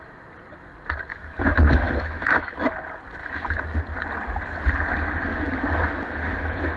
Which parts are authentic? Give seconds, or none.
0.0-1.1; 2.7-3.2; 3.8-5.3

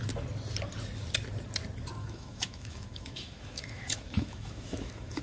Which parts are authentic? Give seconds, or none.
0.0-2.0

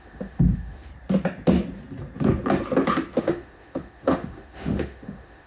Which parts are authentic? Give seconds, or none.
0.9-3.2

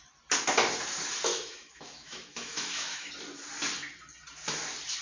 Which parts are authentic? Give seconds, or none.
0.0-1.3; 3.1-5.0

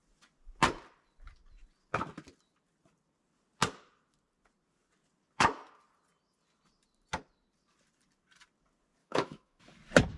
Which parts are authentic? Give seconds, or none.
0.0-9.0; 9.6-10.2